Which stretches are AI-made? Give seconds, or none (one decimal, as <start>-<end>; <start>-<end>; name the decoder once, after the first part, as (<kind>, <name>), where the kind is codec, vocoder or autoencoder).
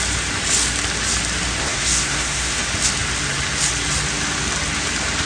1.6-2.6 (codec, SNAC)